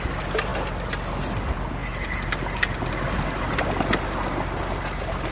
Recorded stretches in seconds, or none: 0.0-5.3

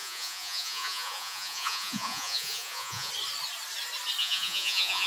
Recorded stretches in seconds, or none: 3.1-4.2

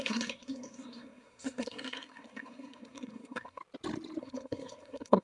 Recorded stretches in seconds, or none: 3.6-4.2